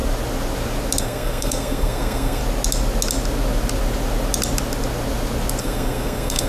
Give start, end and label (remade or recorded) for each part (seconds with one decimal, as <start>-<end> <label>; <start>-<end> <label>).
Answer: 0.0-1.0 recorded; 1.0-2.4 remade; 2.4-5.6 recorded; 5.6-6.5 remade